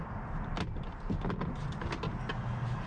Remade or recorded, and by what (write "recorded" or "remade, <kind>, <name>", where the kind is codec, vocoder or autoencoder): recorded